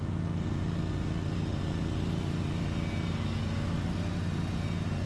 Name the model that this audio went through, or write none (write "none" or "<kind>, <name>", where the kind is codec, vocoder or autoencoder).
none